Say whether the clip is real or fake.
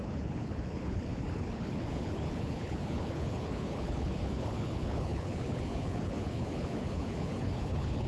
fake